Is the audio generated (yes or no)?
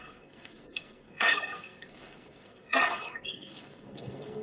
yes